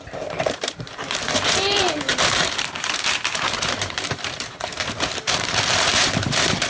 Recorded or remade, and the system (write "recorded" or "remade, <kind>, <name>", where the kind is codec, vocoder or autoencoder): remade, vocoder, BigVGAN v2